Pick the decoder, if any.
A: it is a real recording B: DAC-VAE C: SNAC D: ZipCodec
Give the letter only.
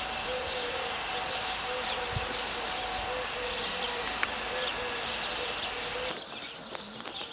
A